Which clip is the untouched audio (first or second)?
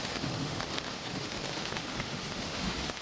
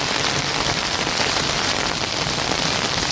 second